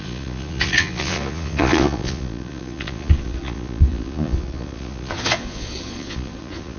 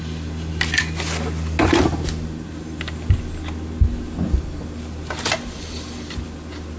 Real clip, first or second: second